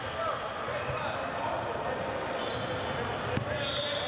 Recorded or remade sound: recorded